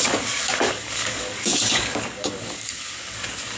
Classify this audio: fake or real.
fake